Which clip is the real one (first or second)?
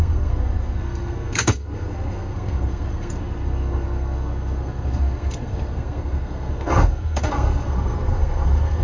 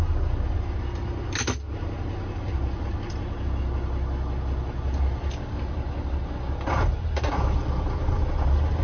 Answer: second